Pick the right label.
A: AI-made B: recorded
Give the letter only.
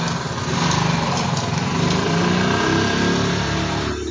B